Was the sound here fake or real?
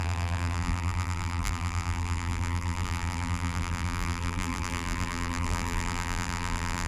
fake